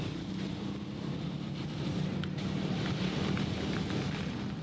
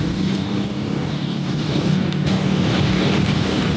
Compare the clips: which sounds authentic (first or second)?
first